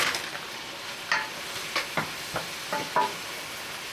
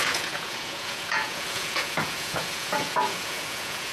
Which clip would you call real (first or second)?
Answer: first